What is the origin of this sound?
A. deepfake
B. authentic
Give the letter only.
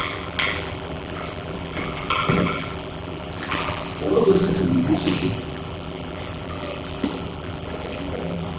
A